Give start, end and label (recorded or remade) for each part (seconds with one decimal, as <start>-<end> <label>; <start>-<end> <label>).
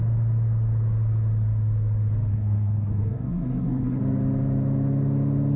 0.0-2.3 recorded; 2.3-4.0 remade; 4.0-5.6 recorded